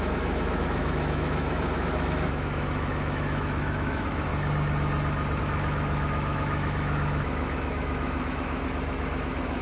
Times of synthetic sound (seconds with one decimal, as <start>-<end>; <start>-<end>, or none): 0.0-4.3; 5.4-9.6